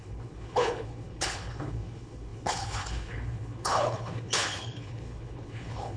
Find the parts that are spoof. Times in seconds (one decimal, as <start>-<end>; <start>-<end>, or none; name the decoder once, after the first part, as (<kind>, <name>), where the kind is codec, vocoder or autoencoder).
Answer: 0.0-6.0 (codec, HILCodec)